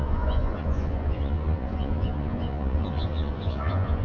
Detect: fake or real fake